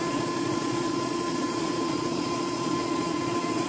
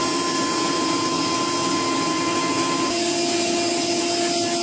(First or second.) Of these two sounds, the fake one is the first